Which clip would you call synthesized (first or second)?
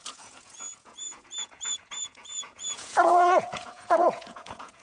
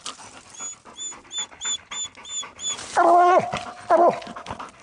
first